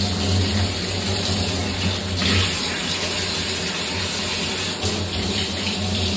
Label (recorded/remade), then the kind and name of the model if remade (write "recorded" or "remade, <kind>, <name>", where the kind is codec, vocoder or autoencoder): recorded